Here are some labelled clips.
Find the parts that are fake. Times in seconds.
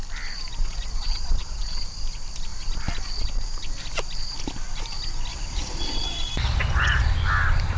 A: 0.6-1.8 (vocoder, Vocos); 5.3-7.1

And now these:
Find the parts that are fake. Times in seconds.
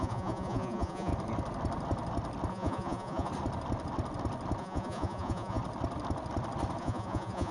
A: 0.0-1.1 (vocoder, Vocos); 2.5-3.3; 4.6-5.6; 6.8-7.5